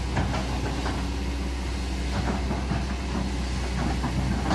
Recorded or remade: recorded